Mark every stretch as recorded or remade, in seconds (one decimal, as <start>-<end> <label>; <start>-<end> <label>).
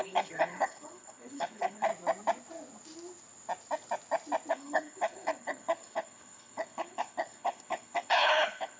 0.0-1.9 remade; 1.9-4.5 recorded; 4.5-8.8 remade